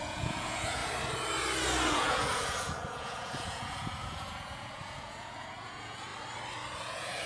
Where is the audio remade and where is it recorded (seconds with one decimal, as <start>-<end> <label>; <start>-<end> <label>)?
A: 0.0-0.8 remade; 0.8-1.9 recorded; 1.9-6.1 remade; 6.1-6.8 recorded; 6.8-7.3 remade